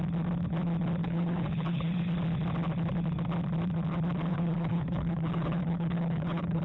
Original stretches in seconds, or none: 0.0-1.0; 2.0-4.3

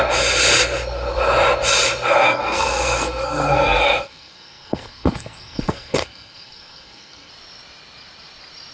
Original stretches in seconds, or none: 0.0-2.2; 7.3-8.7

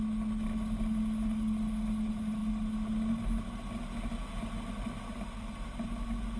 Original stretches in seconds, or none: 0.0-6.4

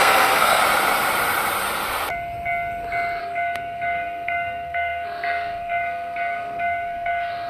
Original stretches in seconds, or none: 0.6-3.2

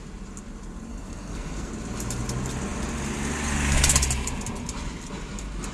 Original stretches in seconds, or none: 0.0-0.9; 1.7-5.7